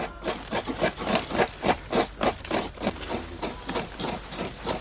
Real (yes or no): yes